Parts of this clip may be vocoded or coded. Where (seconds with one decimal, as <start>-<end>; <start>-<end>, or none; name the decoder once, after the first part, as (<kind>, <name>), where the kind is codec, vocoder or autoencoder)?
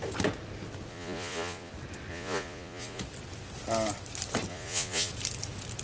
0.9-1.7 (vocoder, Vocos); 2.1-3.0; 4.5-5.1